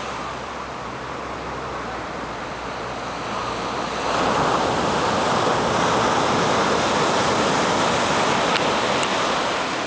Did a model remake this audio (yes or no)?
no